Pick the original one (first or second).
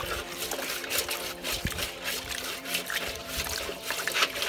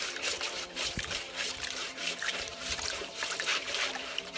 first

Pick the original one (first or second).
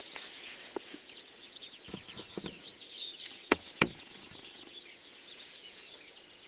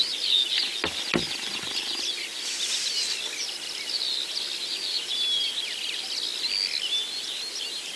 second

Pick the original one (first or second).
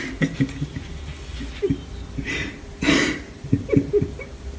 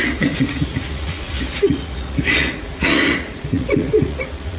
first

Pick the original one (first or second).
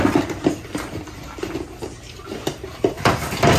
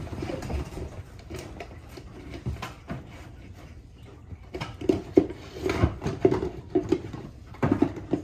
first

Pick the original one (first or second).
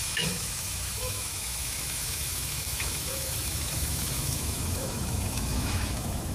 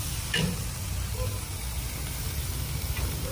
second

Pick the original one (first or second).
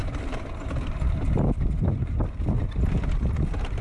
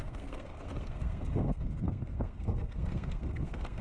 first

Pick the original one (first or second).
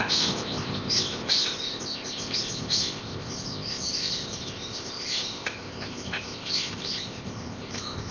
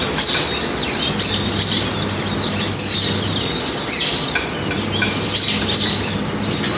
second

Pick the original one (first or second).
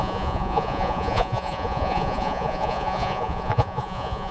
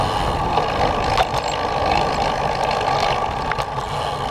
second